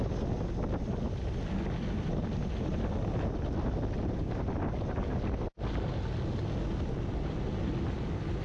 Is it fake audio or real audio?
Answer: real